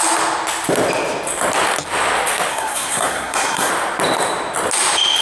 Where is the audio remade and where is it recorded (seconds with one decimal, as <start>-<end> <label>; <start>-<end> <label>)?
0.0-2.5 recorded; 2.5-3.7 remade; 3.7-5.2 recorded